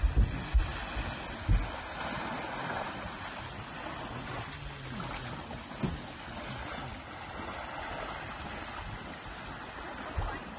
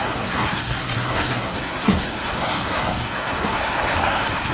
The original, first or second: first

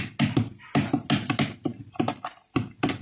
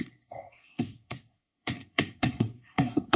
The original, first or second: first